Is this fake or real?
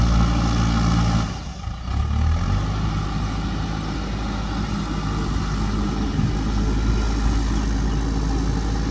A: real